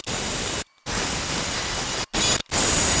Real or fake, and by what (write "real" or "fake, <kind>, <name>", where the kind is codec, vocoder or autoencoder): real